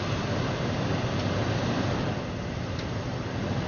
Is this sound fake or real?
real